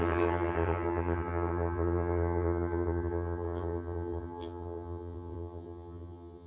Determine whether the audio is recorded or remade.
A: remade